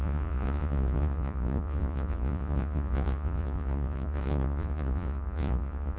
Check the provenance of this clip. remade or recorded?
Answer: remade